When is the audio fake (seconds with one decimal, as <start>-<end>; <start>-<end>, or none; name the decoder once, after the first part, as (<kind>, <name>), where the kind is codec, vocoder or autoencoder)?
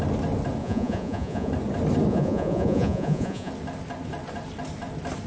0.6-1.5 (vocoder, Vocos); 2.1-3.5